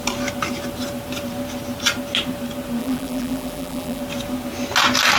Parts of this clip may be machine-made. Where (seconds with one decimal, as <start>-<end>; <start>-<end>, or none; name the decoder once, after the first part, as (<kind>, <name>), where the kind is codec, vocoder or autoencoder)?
2.8-4.0 (vocoder, BigVGAN v2)